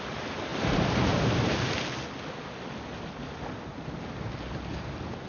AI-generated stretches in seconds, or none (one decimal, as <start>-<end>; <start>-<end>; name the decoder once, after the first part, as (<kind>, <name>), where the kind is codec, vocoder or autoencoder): none